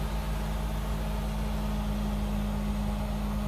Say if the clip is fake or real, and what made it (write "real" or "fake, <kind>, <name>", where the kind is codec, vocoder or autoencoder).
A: real